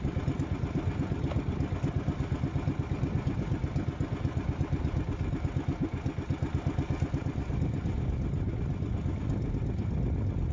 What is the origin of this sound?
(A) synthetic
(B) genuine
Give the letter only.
B